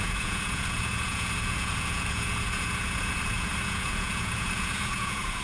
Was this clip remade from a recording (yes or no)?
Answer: yes